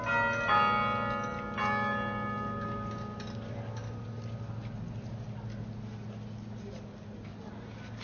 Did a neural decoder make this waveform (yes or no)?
no